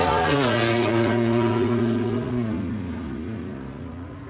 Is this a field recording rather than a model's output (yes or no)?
no